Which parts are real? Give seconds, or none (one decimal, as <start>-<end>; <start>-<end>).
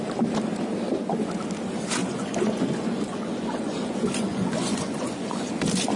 0.0-2.0; 5.5-6.0